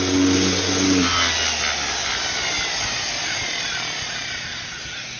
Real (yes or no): yes